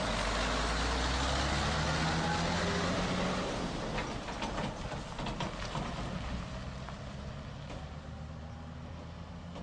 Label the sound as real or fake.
real